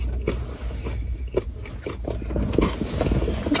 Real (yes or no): yes